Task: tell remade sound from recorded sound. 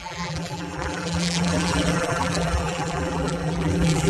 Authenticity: remade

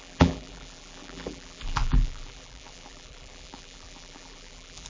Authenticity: remade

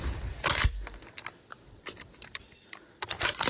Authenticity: remade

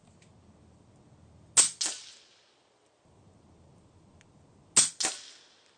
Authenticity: recorded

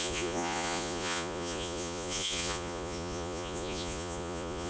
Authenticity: remade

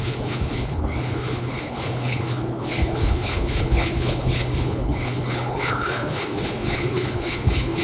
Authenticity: remade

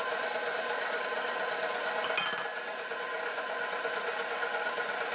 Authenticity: recorded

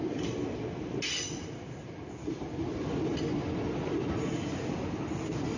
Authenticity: recorded